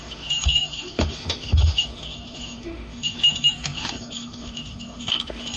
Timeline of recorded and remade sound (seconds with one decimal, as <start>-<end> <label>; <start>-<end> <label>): 0.0-5.6 remade